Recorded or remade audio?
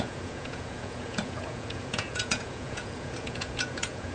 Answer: remade